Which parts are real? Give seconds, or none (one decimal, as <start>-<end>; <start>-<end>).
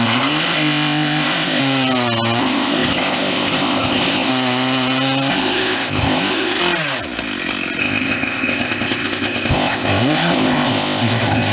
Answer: 1.6-2.4; 4.3-5.3; 6.6-7.8